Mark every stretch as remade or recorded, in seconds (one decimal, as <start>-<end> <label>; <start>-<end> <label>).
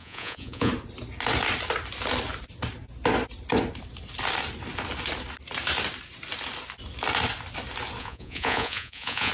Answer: 0.0-0.7 remade; 0.7-8.0 recorded; 8.0-9.3 remade